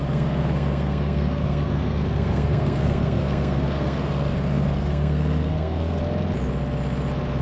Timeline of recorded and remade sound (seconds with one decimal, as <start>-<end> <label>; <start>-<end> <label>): 0.0-6.0 remade; 6.0-7.4 recorded